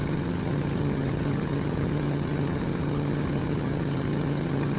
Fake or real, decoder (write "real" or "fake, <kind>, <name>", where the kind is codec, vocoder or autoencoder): fake, vocoder, HiFi-GAN